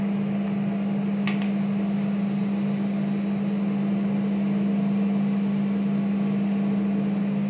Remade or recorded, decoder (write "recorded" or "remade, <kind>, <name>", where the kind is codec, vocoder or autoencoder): recorded